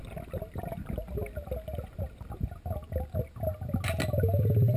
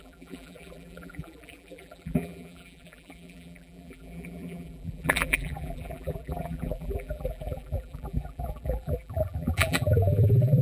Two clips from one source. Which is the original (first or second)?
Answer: first